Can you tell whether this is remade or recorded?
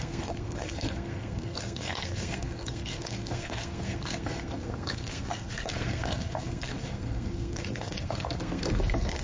remade